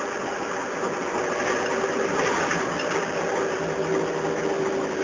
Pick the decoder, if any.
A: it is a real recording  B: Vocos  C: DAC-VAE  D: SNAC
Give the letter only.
A